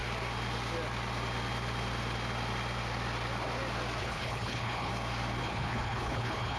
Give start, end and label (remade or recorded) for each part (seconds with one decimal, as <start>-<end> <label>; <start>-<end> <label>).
0.0-4.0 recorded; 4.0-4.9 remade; 4.9-5.4 recorded; 5.4-6.6 remade